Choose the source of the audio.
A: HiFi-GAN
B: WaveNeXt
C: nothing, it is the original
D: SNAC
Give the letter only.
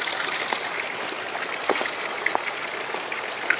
C